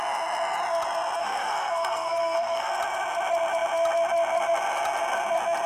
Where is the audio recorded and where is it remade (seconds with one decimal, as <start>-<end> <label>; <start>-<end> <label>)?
0.0-1.2 recorded; 1.2-2.7 remade; 2.7-5.7 recorded